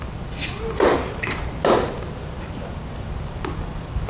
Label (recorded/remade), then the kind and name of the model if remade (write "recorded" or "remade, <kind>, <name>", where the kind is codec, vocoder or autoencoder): recorded